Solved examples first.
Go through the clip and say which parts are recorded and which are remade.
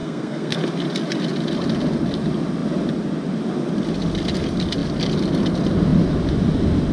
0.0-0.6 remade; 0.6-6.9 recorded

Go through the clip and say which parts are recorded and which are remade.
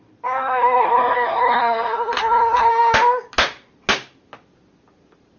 0.0-0.4 recorded; 0.4-2.7 remade; 2.7-5.4 recorded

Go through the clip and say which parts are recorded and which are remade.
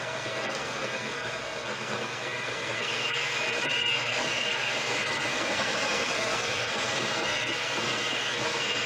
0.0-8.9 remade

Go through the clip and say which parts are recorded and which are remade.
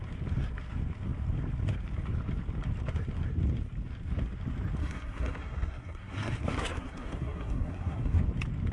0.0-4.8 recorded; 4.8-8.2 remade; 8.2-8.7 recorded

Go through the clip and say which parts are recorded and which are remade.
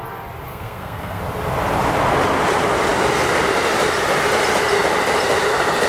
0.0-0.5 recorded; 0.5-1.2 remade; 1.2-5.9 recorded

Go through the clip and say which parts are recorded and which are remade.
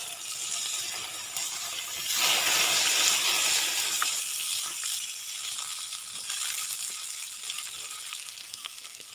0.0-8.1 recorded; 8.1-9.1 remade